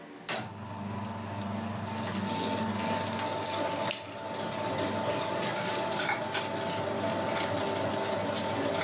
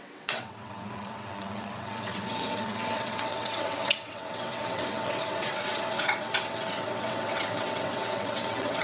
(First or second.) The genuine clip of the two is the first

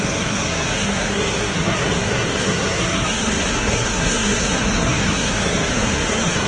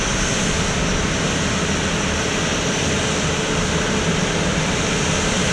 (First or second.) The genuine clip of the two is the second